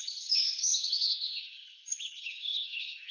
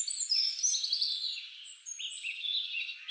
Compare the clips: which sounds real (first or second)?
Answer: second